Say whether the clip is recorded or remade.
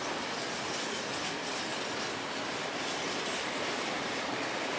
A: remade